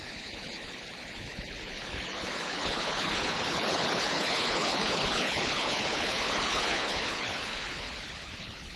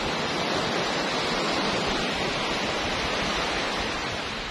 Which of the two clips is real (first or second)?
second